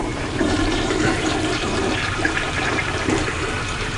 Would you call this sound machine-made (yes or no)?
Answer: yes